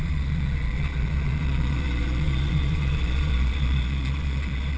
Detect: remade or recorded remade